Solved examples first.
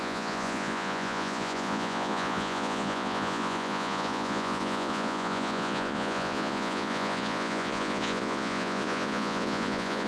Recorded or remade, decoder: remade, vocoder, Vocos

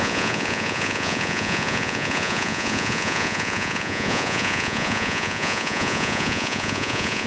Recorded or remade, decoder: remade, vocoder, Vocos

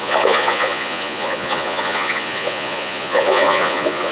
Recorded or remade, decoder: remade, vocoder, Vocos